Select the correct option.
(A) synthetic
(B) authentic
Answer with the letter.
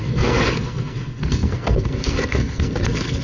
A